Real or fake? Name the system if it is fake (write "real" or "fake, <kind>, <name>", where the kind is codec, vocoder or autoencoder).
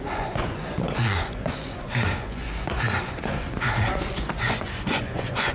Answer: fake, vocoder, Vocos